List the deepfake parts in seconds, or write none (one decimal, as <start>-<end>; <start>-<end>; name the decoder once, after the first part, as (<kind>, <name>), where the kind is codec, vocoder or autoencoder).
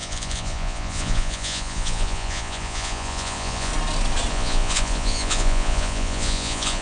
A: 0.0-3.7 (vocoder, Vocos); 4.3-6.8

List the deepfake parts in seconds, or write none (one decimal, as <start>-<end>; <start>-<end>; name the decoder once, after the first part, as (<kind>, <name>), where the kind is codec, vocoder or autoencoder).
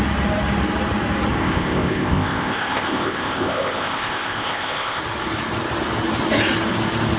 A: 1.4-5.0 (codec, ZipCodec)